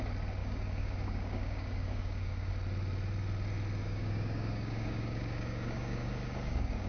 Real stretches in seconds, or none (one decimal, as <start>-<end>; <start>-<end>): 0.0-0.4; 2.5-3.8